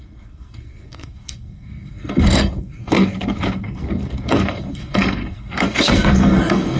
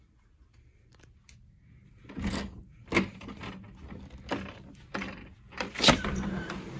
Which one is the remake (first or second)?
first